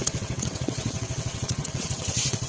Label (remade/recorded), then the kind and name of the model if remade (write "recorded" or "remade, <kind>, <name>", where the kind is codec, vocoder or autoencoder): remade, vocoder, WaveNeXt